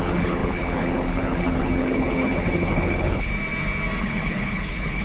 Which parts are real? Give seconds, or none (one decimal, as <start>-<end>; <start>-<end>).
3.3-4.0